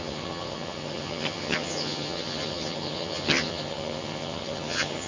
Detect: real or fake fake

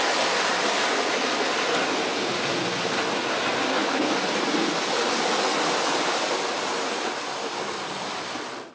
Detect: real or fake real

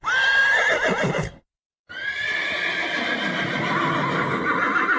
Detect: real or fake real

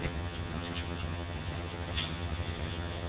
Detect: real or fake fake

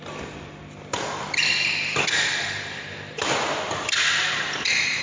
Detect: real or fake real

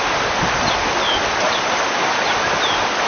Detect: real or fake real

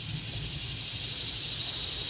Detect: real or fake real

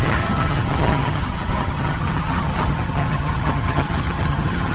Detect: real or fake fake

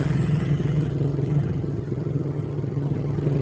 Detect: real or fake fake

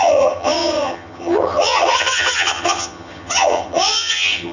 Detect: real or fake fake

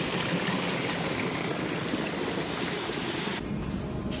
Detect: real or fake real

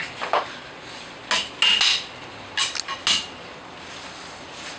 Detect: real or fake real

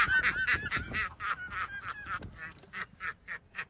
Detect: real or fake real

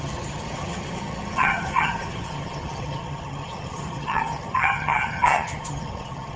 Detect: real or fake fake